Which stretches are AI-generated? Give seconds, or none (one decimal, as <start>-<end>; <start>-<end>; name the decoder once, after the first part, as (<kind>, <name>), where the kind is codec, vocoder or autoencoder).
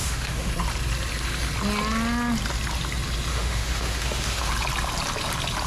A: 0.0-0.5 (autoencoder, DAC-VAE); 3.3-4.5